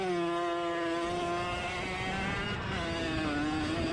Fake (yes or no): no